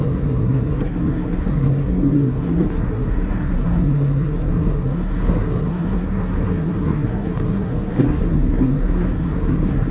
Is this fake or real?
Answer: fake